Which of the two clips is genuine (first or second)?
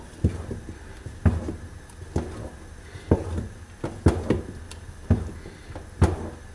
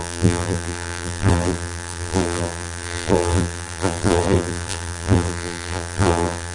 first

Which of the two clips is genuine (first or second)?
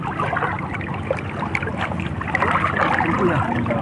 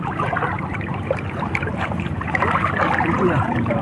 first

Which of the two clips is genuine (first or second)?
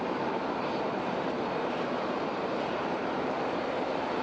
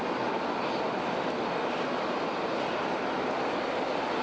second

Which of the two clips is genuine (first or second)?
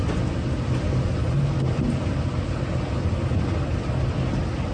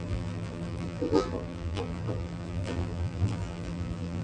first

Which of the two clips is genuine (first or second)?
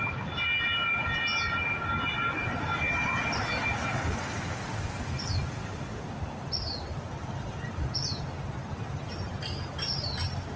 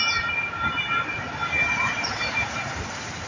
first